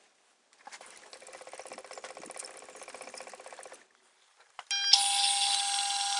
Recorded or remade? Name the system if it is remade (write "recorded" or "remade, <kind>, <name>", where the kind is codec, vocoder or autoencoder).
recorded